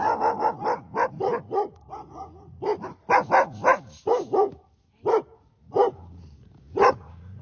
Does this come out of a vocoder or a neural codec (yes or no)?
no